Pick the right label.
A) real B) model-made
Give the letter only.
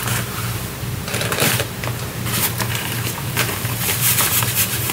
B